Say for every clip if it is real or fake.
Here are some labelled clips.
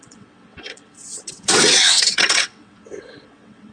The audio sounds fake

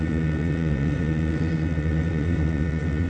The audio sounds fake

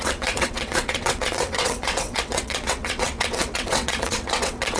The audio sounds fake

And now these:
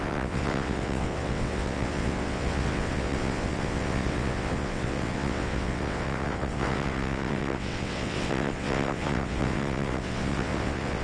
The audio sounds fake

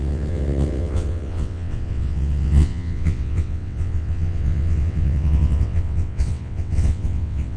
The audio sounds fake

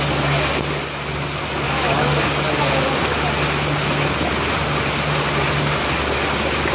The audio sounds real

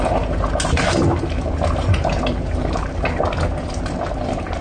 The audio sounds real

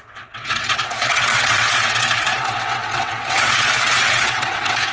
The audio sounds fake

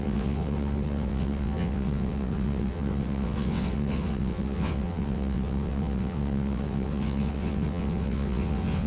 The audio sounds fake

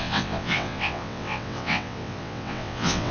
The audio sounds fake